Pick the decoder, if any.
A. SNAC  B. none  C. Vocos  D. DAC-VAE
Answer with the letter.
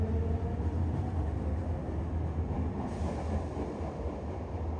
B